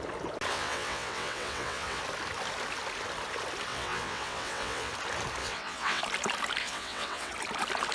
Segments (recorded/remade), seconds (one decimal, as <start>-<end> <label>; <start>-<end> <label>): 0.0-0.5 recorded; 0.5-2.0 remade; 2.0-3.7 recorded; 3.7-4.9 remade; 4.9-5.4 recorded; 5.4-6.0 remade; 6.0-6.6 recorded; 6.6-7.3 remade; 7.3-7.9 recorded